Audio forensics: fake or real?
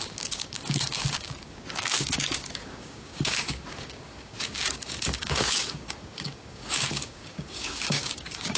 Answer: fake